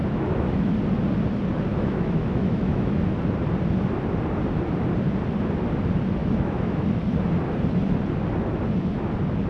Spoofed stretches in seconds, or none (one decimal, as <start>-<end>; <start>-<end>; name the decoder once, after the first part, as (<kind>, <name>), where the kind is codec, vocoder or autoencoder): 0.0-0.7 (autoencoder, DAC-VAE); 1.7-3.0; 6.2-6.8